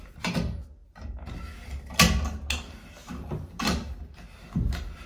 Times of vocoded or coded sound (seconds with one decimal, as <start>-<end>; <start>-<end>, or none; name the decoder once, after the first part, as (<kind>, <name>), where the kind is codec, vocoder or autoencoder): none